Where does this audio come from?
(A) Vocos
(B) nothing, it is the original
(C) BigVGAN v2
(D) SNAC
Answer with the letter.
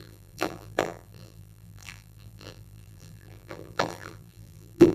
C